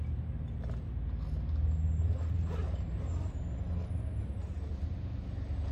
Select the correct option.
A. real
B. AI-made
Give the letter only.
A